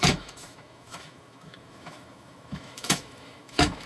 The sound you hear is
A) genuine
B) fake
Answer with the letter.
B